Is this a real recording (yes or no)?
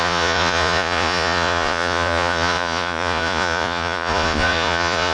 no